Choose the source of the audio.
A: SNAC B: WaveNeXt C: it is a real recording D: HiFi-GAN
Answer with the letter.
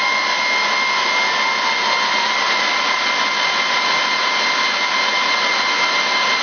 C